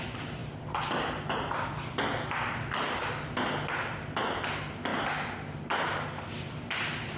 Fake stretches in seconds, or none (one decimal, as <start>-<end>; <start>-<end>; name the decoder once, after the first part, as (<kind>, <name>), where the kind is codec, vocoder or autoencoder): none

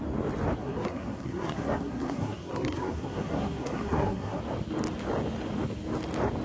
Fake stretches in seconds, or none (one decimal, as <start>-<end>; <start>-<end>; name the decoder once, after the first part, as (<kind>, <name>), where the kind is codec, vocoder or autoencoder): 0.6-4.4 (codec, SNAC)

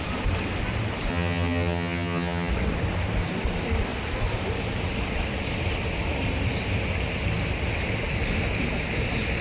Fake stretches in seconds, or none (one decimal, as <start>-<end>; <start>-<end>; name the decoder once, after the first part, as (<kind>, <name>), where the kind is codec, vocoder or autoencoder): 1.1-2.5 (vocoder, HiFi-GAN)

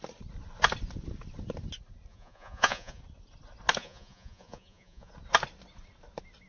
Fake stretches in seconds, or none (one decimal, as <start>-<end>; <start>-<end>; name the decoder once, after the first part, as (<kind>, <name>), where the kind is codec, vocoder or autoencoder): 2.1-3.0 (vocoder, Vocos); 3.8-5.1

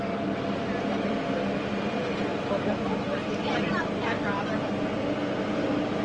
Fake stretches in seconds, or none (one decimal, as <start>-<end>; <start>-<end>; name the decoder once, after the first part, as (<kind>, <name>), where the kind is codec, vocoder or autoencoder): none

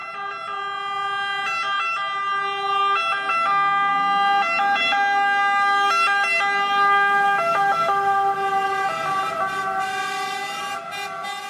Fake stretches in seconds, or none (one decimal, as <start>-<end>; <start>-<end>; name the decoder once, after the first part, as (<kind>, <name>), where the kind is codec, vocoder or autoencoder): none